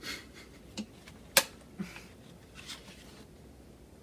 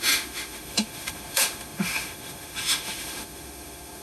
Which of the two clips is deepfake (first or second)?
second